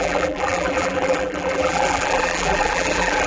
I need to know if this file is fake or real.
fake